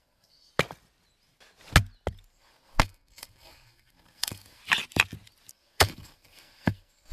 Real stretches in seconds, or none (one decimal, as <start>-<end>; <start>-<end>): 0.5-2.3; 4.6-5.5